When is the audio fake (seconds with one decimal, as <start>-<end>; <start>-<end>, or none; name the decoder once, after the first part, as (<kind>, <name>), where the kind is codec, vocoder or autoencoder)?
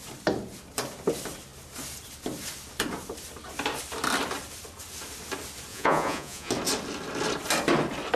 5.7-6.5 (vocoder, Vocos)